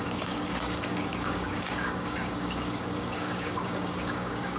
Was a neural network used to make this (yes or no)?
yes